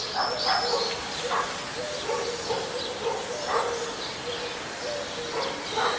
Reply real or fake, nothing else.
real